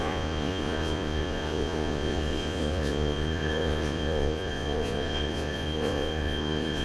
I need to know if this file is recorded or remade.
remade